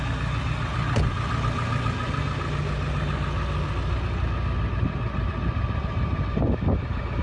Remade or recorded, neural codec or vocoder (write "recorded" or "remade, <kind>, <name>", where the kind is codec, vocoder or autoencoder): recorded